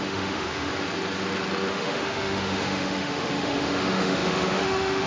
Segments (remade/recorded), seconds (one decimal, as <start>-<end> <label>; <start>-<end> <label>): 0.0-0.7 remade; 0.7-1.7 recorded; 1.7-5.1 remade